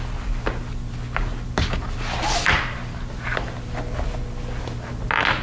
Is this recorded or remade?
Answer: recorded